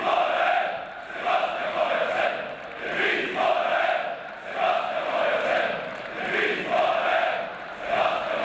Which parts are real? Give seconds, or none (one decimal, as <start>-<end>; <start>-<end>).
0.0-1.6; 2.3-8.4